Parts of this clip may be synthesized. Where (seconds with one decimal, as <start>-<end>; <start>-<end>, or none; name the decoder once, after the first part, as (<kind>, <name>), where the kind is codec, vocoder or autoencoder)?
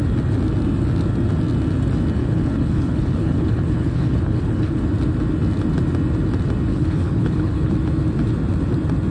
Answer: 2.2-4.8 (codec, HILCodec); 6.7-7.7